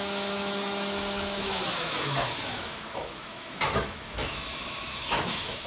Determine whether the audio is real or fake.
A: fake